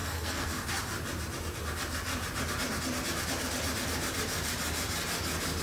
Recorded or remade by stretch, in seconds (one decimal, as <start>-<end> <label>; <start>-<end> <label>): 0.0-0.7 remade; 0.7-5.6 recorded